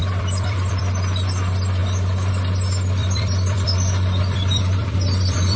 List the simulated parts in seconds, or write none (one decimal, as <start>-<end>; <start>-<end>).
0.0-0.8; 3.0-5.6